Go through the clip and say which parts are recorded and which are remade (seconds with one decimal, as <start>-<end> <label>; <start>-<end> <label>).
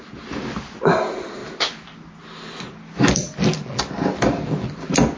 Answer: 0.0-5.2 recorded